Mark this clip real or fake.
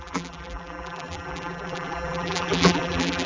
fake